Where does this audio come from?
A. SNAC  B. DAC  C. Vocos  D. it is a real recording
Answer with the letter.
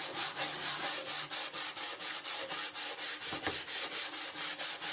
D